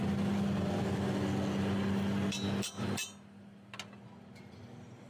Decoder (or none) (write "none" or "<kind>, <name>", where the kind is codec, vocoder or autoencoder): none